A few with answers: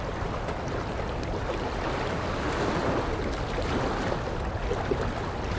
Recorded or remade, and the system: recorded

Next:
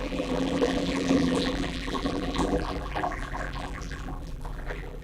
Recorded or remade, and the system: remade, vocoder, BigVGAN v2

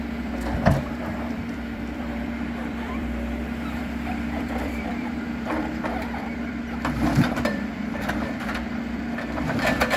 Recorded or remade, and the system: remade, vocoder, BigVGAN v2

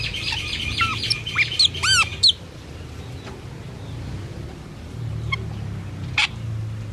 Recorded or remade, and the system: recorded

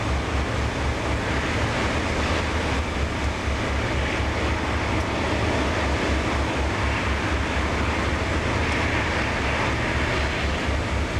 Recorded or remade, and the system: recorded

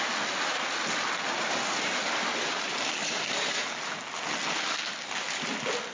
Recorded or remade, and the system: recorded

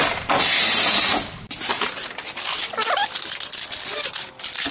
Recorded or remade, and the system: recorded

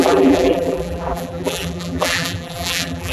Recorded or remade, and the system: remade, vocoder, BigVGAN v2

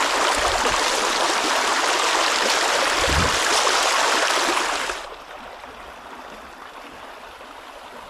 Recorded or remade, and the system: recorded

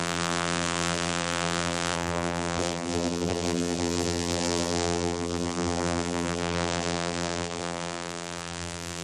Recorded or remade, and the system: remade, vocoder, BigVGAN v2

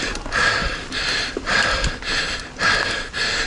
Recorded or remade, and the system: recorded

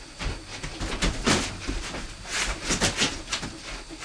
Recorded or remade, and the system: recorded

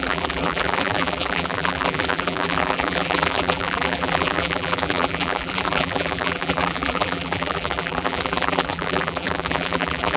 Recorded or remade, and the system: remade, vocoder, BigVGAN v2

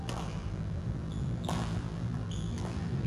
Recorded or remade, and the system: remade, vocoder, BigVGAN v2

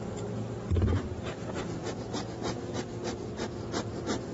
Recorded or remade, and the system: remade, vocoder, BigVGAN v2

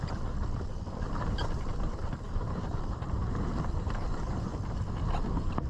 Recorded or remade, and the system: remade, vocoder, BigVGAN v2